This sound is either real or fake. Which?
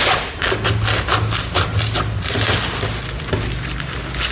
real